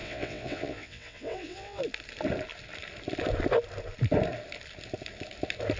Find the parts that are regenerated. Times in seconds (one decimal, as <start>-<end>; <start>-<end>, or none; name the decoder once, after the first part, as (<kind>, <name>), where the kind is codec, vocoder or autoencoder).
0.0-1.8 (vocoder, WaveNeXt)